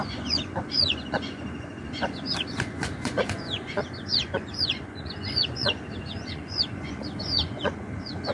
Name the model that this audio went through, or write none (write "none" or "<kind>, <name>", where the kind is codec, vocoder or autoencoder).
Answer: vocoder, Vocos